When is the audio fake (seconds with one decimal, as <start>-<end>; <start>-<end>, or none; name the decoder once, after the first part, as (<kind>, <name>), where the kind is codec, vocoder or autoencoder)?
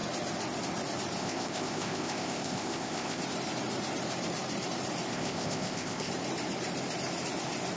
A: 1.2-3.2 (codec, ZipCodec); 5.1-6.1